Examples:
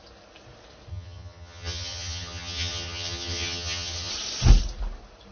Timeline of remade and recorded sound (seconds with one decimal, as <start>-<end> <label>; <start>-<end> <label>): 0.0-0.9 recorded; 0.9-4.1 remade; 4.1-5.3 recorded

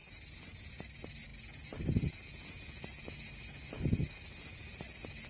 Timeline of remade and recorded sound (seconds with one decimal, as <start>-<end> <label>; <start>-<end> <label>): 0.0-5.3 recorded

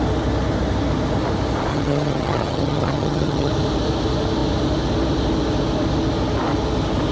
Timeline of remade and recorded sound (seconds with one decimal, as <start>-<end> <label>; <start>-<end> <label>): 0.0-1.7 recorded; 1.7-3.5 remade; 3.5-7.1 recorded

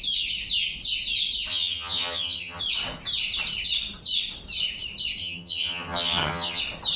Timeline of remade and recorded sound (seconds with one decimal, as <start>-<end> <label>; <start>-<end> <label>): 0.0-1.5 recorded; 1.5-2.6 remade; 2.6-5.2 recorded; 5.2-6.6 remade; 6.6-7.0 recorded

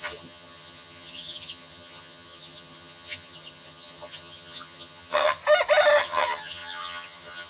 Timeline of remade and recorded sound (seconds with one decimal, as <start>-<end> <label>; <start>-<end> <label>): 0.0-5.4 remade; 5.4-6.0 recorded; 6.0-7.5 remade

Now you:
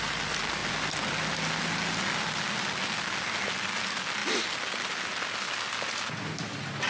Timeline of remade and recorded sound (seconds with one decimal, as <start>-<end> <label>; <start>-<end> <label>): 0.0-6.9 recorded

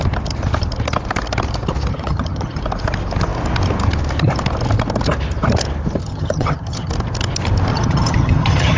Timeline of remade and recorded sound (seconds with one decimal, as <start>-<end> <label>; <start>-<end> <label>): 0.0-1.9 recorded; 1.9-2.6 remade; 2.6-6.0 recorded; 6.0-6.9 remade; 6.9-7.7 recorded; 7.7-8.8 remade

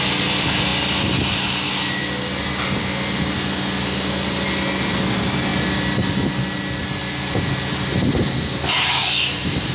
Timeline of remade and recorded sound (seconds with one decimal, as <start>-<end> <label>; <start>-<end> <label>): 0.0-9.7 recorded